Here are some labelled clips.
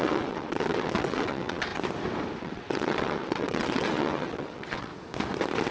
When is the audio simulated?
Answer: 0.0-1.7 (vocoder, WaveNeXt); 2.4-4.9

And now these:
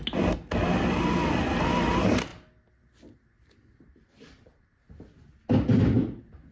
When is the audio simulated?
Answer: none

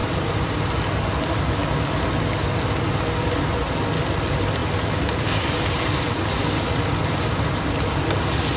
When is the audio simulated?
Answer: 0.0-0.6 (vocoder, BigVGAN v2); 4.6-6.2

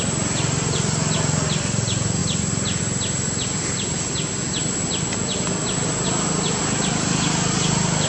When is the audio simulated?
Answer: none

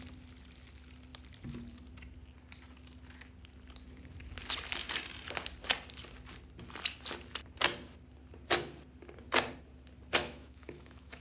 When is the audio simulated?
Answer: 10.2-11.2 (autoencoder, DAC-VAE)